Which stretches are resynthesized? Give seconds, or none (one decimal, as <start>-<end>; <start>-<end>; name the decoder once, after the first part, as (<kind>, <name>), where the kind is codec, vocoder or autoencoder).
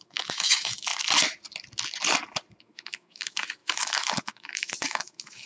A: 0.0-0.9 (autoencoder, DAC-VAE); 2.6-5.5